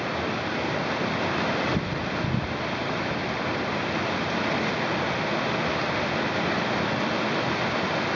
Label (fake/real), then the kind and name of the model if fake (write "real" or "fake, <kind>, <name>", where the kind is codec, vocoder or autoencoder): real